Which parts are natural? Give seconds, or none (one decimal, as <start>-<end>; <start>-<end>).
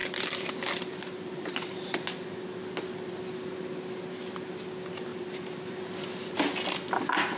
2.0-5.1; 5.8-7.4